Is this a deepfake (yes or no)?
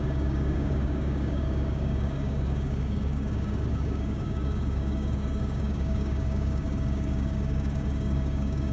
yes